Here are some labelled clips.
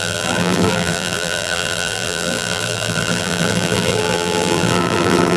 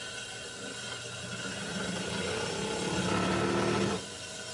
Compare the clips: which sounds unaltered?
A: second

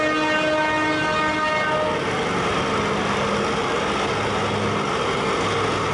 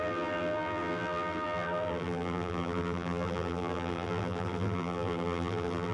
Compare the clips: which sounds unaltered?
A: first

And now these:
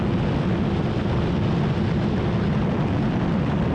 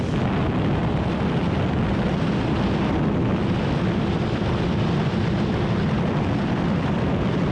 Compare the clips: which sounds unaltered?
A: first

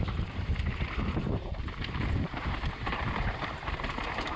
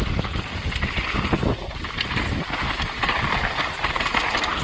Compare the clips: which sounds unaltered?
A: second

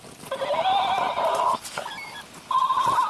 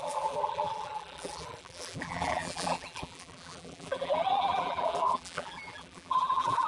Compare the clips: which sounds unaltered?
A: first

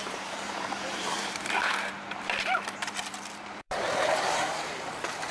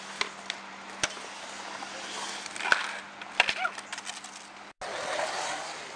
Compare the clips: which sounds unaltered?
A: second